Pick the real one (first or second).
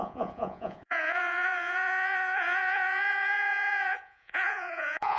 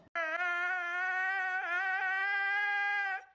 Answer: second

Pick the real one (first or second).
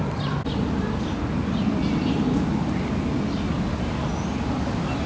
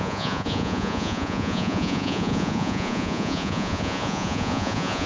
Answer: first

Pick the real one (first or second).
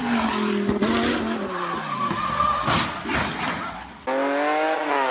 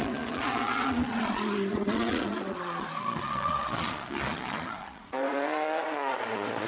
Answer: first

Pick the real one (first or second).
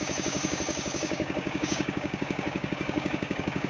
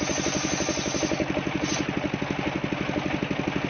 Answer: second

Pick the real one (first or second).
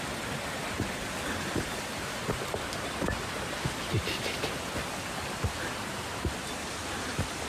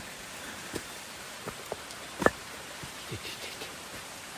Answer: first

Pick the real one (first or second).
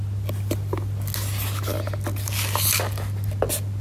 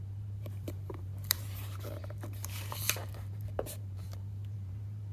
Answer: first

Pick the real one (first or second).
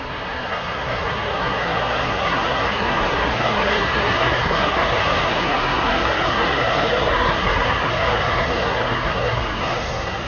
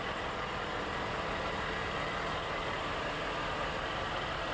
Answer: second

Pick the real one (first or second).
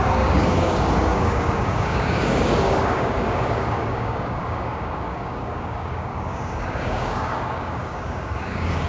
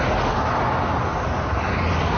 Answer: second